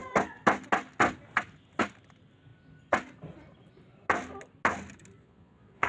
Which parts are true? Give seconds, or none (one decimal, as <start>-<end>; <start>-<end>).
0.0-5.2